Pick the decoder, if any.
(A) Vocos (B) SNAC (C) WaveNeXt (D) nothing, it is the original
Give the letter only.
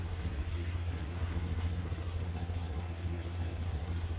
B